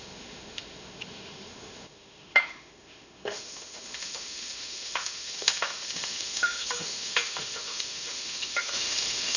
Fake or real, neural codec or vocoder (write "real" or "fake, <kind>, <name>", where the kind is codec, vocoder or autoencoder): fake, autoencoder, DAC-VAE